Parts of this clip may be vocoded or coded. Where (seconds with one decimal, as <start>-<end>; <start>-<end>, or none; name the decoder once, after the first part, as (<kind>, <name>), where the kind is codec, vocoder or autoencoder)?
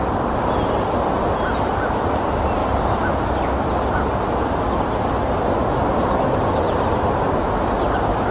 none